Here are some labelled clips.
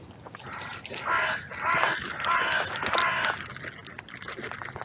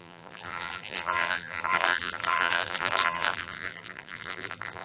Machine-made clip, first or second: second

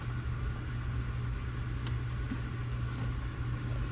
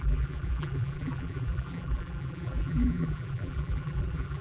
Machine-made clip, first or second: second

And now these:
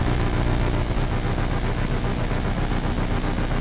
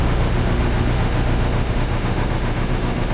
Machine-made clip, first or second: second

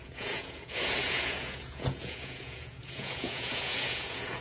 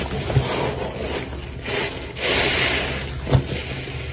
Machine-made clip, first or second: first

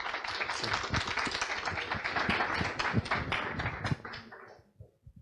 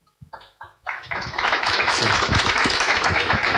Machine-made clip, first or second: second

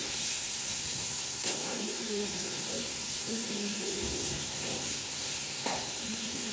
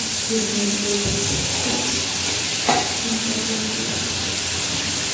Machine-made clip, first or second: first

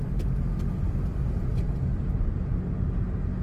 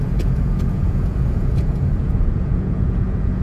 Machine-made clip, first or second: second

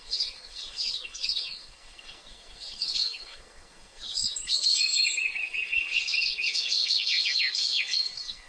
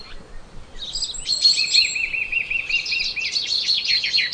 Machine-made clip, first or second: first